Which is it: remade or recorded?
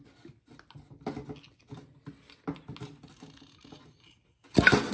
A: recorded